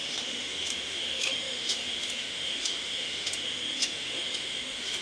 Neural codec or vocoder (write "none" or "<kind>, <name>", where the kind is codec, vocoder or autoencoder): autoencoder, DAC-VAE